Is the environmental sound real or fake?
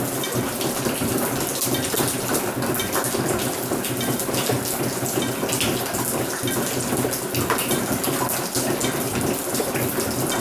real